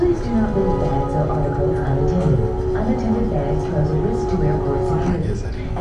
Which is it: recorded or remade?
recorded